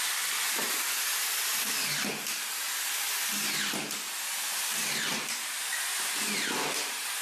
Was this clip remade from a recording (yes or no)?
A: no